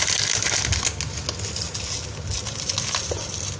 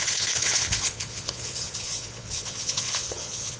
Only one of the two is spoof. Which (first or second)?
second